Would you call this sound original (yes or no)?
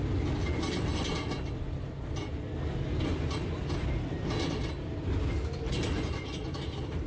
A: yes